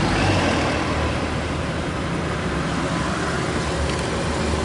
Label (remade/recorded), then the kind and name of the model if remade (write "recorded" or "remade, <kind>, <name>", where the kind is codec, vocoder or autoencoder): recorded